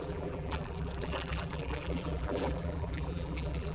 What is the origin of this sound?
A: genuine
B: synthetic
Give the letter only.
B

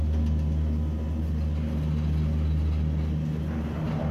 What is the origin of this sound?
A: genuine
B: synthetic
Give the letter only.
A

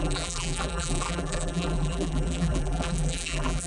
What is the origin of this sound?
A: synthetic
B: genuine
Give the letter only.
A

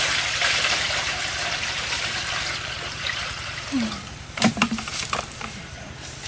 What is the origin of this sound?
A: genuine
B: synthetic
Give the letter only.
B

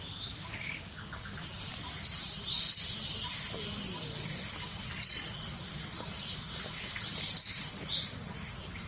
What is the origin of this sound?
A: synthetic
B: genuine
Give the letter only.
A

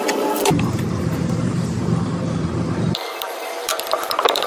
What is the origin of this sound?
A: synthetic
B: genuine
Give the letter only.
A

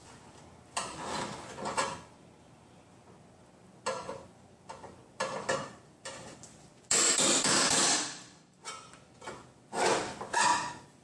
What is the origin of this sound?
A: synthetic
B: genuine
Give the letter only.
B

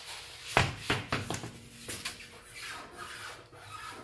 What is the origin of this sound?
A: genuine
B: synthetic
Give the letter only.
A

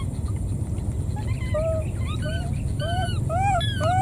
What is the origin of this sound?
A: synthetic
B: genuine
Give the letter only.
B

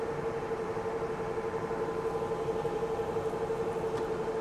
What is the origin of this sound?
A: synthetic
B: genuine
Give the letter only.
A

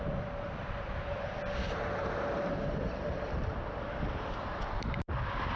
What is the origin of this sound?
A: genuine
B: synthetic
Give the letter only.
B